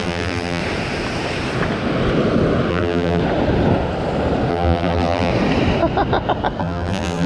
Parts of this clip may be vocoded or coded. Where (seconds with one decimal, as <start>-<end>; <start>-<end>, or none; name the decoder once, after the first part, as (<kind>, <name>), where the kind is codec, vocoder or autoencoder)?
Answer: 0.0-0.6 (vocoder, BigVGAN v2); 2.7-3.2; 4.5-5.3; 6.6-7.3